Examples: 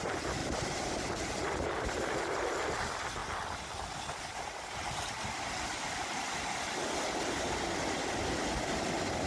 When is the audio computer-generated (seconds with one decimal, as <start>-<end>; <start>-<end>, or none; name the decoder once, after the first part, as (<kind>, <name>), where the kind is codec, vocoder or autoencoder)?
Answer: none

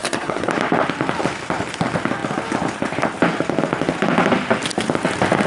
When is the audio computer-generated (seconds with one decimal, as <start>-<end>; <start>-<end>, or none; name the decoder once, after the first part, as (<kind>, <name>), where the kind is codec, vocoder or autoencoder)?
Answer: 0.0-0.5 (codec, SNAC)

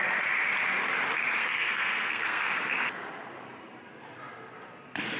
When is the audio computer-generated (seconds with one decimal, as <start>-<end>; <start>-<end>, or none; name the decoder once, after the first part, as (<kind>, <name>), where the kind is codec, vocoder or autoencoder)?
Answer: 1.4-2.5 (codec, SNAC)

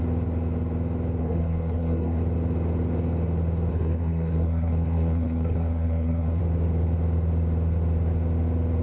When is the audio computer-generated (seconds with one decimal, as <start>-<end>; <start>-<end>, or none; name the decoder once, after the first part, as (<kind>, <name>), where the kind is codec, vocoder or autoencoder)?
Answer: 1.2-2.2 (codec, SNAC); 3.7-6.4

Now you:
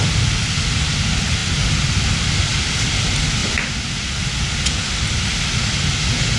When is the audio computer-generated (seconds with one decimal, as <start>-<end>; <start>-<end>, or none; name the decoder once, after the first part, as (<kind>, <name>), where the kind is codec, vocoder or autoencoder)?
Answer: none

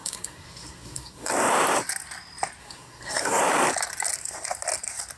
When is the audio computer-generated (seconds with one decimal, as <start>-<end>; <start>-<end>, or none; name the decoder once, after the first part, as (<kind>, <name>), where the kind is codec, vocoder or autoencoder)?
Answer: 0.0-1.3 (codec, SNAC); 2.6-3.4

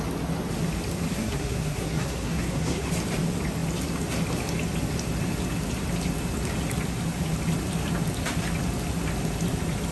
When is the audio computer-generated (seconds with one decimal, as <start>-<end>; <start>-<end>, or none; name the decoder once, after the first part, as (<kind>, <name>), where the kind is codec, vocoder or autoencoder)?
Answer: 1.1-2.9 (codec, SNAC)